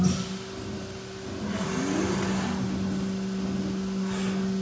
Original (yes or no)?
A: yes